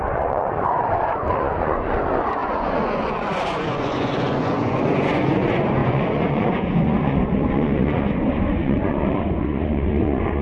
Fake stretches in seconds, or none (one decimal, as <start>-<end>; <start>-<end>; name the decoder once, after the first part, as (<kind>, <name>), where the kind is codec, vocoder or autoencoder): 0.0-10.4 (vocoder, Vocos)